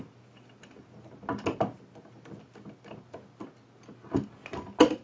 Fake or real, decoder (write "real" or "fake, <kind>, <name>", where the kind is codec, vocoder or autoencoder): real